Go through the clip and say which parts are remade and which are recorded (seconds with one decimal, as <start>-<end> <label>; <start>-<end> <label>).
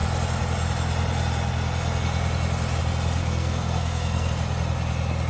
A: 0.0-3.2 recorded; 3.2-4.3 remade; 4.3-5.3 recorded